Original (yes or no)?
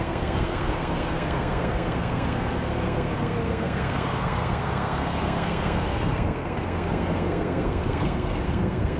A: no